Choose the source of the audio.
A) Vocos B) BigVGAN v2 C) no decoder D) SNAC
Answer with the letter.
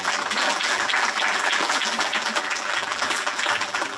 B